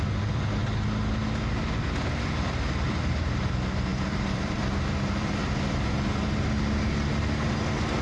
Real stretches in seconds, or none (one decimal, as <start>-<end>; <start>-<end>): 0.0-3.9; 5.9-8.0